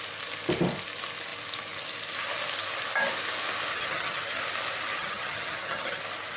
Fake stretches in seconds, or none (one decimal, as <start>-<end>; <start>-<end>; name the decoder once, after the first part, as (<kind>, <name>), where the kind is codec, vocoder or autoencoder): 3.7-4.4 (vocoder, HiFi-GAN); 4.9-6.0

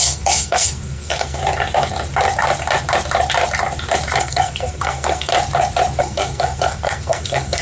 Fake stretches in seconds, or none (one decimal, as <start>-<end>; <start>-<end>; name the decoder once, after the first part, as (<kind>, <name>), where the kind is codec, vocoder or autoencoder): 0.0-1.4 (codec, SNAC); 4.2-5.3; 6.0-7.6

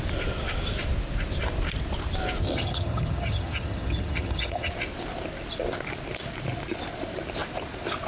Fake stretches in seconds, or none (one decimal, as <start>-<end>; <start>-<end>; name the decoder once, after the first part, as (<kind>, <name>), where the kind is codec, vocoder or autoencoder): 2.4-4.7 (vocoder, HiFi-GAN)

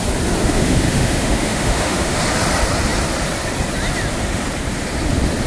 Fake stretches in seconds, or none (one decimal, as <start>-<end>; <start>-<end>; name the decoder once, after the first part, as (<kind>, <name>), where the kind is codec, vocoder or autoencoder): 0.4-2.2 (autoencoder, DAC-VAE)

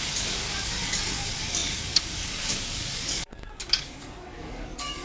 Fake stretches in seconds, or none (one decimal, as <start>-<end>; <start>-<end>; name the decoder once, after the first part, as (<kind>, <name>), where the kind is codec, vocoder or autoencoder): 0.0-5.0 (codec, DAC)

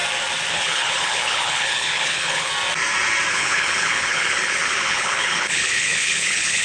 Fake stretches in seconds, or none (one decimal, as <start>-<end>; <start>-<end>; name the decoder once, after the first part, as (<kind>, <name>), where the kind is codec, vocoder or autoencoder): 0.5-2.5 (codec, HILCodec); 3.3-6.6

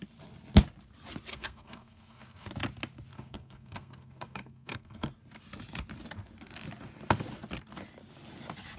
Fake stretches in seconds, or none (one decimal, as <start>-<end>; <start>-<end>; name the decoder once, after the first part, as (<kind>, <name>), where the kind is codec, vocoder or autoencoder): 1.3-2.5 (codec, SNAC); 3.1-5.1